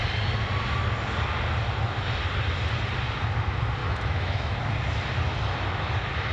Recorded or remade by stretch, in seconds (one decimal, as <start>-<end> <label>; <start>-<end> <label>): 0.0-3.8 recorded; 3.8-4.6 remade; 4.6-6.3 recorded